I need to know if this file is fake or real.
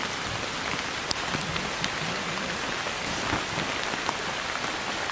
real